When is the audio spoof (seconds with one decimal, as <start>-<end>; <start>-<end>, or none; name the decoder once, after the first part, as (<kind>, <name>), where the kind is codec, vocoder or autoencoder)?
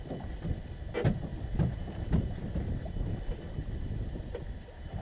none